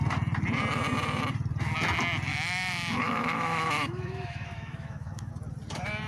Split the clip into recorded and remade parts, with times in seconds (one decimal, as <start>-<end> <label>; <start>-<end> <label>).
0.0-2.3 recorded; 2.3-5.3 remade; 5.3-6.1 recorded